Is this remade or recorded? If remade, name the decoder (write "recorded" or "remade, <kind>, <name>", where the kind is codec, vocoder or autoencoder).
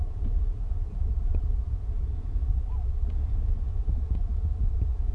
remade, vocoder, Vocos